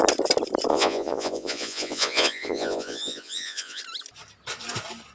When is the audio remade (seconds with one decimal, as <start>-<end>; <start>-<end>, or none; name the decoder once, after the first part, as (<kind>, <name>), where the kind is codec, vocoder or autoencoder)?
0.7-3.8 (vocoder, Vocos)